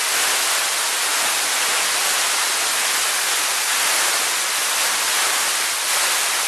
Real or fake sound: real